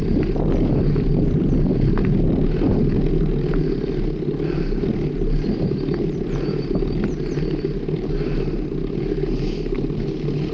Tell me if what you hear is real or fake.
real